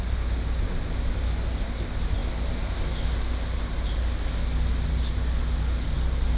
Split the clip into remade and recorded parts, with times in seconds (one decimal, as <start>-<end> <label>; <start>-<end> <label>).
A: 0.0-6.4 recorded